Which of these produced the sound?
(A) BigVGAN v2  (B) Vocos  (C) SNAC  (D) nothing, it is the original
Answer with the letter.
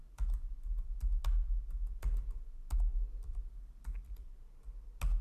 D